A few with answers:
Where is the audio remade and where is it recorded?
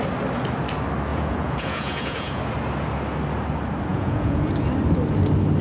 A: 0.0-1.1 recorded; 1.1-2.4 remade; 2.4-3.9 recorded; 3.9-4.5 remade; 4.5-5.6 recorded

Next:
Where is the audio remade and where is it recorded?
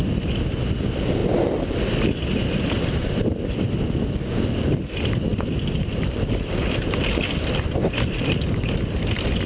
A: 0.0-9.5 recorded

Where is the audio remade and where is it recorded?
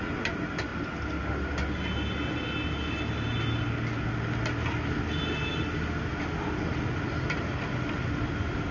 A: 0.0-8.7 recorded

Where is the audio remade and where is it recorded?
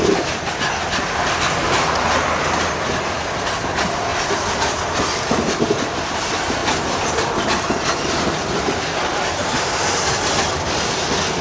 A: 0.0-11.4 recorded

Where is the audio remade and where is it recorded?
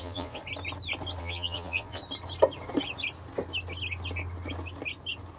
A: 0.0-0.4 remade; 0.4-1.2 recorded; 1.2-2.0 remade; 2.0-5.4 recorded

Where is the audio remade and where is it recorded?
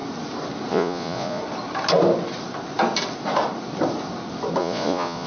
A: 0.0-0.7 recorded; 0.7-1.4 remade; 1.4-4.6 recorded; 4.6-5.3 remade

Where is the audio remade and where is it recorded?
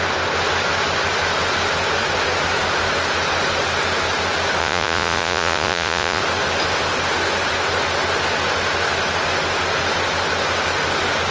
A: 0.0-4.6 recorded; 4.6-6.2 remade; 6.2-11.3 recorded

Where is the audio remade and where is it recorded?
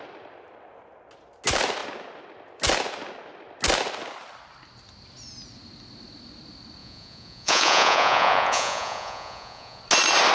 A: 0.0-6.8 recorded; 6.8-9.8 remade; 9.8-10.3 recorded